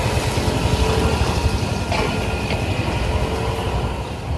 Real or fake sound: real